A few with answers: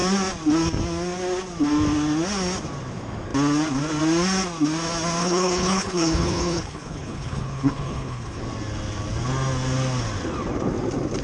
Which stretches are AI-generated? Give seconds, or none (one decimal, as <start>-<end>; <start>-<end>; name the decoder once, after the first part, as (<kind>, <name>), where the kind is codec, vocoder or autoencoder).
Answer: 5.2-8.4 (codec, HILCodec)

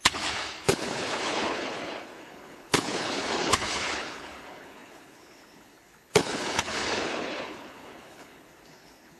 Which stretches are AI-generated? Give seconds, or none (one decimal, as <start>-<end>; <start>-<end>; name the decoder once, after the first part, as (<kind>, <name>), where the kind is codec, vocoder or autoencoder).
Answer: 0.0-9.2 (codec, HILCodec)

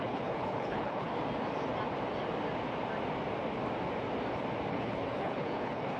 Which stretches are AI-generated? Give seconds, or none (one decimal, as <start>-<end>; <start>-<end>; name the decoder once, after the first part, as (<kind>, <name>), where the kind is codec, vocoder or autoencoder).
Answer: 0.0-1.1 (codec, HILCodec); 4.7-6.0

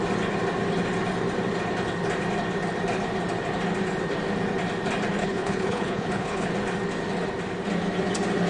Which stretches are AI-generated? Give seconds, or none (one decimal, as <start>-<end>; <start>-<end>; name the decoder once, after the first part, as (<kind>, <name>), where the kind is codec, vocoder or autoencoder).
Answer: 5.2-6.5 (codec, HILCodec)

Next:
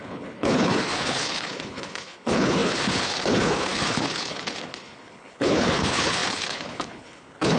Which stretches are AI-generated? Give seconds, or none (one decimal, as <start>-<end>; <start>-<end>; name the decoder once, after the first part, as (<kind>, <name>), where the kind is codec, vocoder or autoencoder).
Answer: 0.0-7.6 (codec, HILCodec)